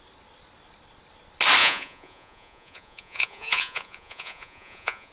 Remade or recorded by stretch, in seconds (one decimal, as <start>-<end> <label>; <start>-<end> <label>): 0.0-1.6 recorded; 1.6-5.1 remade